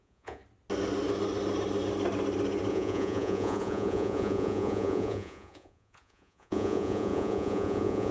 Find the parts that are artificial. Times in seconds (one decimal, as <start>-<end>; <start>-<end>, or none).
0.0-0.4; 2.7-8.1